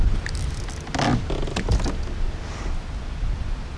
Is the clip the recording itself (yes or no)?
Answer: yes